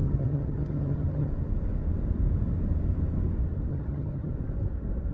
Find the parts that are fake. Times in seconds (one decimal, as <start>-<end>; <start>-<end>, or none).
0.0-1.3; 3.7-4.3